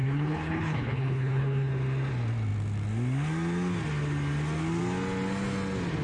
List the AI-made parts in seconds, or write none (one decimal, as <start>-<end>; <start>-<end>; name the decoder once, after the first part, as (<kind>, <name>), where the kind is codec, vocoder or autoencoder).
0.0-1.7 (codec, HILCodec)